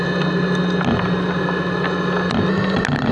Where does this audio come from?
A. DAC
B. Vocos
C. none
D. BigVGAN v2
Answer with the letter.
C